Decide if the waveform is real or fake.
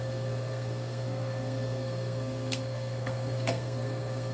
fake